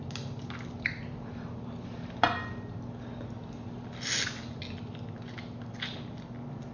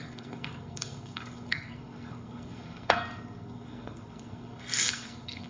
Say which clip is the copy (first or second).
second